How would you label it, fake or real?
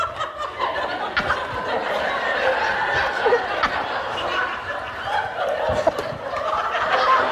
real